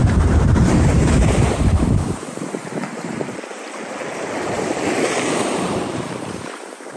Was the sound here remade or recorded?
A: remade